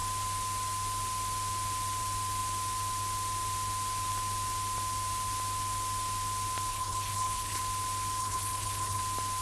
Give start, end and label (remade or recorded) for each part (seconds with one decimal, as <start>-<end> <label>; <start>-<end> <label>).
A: 0.0-6.7 recorded; 6.7-7.6 remade; 7.6-8.2 recorded; 8.2-9.0 remade; 9.0-9.4 recorded